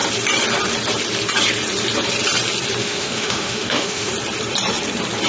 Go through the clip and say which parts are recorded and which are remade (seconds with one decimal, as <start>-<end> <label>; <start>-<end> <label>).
0.0-2.8 recorded; 2.8-4.1 remade; 4.1-5.3 recorded